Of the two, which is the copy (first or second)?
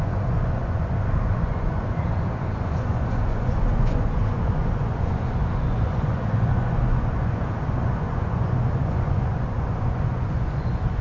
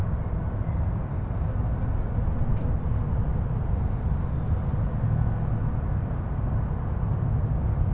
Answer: first